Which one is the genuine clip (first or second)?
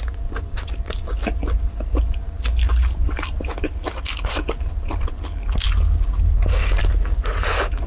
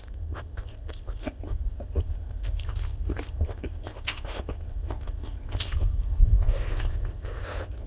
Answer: first